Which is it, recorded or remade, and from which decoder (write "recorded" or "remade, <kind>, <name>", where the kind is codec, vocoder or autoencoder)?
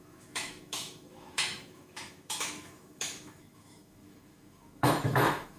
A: remade, autoencoder, DAC-VAE